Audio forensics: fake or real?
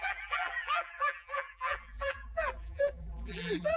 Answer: fake